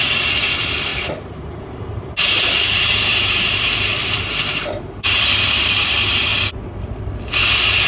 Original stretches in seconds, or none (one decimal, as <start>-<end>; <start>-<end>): 6.3-7.9